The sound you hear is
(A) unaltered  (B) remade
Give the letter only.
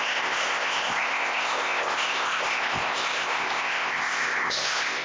B